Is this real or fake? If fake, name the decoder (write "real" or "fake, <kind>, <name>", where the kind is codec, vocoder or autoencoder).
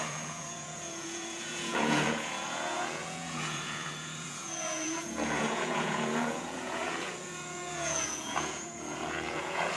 fake, vocoder, Vocos